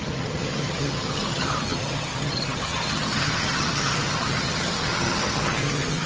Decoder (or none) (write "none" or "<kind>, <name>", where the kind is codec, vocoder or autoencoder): vocoder, HiFi-GAN